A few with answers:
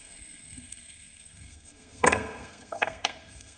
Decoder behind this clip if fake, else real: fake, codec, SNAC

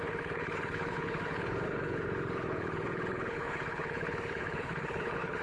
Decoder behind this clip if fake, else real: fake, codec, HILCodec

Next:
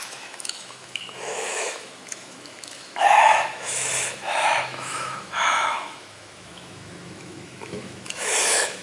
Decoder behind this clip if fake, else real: fake, autoencoder, DAC-VAE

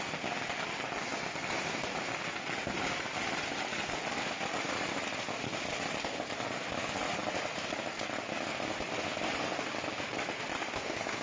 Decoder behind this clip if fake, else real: real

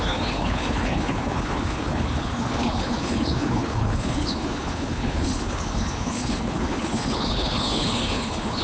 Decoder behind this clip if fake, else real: fake, codec, HILCodec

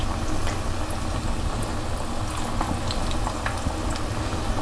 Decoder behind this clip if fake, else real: real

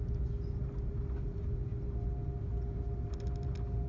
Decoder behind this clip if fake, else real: real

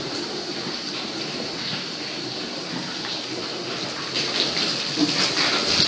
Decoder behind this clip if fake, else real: real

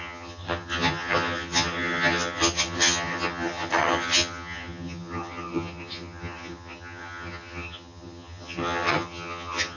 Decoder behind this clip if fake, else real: fake, vocoder, HiFi-GAN